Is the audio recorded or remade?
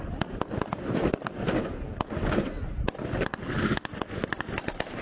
recorded